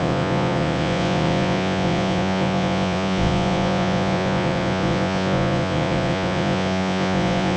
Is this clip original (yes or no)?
no